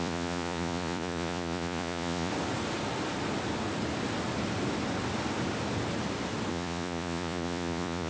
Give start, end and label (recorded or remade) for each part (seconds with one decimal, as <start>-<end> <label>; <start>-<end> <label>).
0.0-2.3 remade; 2.3-6.5 recorded; 6.5-8.1 remade